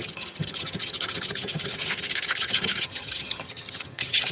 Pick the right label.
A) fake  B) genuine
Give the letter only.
A